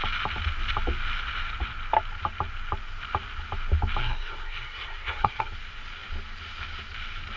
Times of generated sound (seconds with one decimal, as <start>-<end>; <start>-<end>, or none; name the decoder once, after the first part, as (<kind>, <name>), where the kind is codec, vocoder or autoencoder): 4.0-5.5 (codec, SNAC)